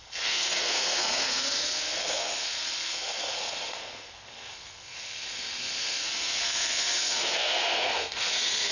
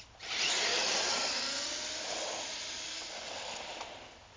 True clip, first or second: second